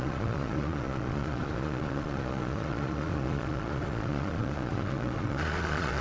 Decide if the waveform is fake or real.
fake